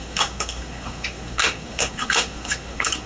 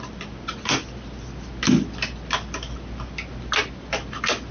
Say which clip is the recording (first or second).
second